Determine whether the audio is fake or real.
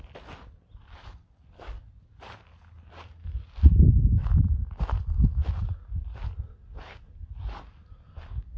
real